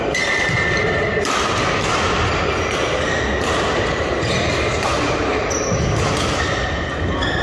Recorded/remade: recorded